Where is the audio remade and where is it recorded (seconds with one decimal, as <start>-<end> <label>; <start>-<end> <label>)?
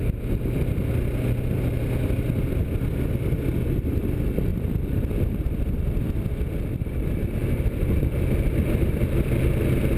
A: 0.0-4.5 recorded; 4.5-9.5 remade; 9.5-10.0 recorded